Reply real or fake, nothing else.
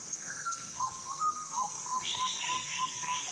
fake